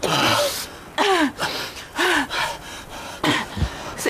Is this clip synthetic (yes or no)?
no